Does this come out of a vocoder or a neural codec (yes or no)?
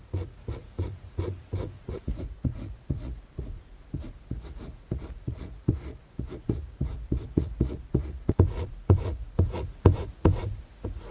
yes